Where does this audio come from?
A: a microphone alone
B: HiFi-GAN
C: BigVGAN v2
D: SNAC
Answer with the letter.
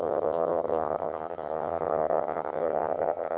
B